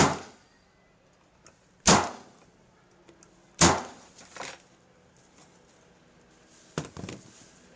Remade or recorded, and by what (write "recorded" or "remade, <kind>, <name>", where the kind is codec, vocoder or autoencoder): recorded